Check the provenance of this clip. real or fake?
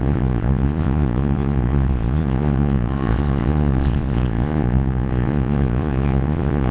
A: fake